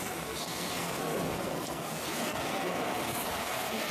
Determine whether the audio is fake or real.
fake